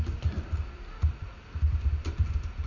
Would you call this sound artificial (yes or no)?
yes